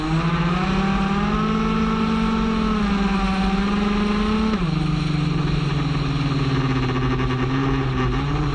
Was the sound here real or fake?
real